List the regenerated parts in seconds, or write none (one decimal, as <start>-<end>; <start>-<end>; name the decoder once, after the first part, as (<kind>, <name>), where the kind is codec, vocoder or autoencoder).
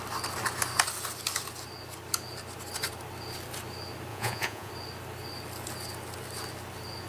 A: 4.1-4.7 (vocoder, Vocos)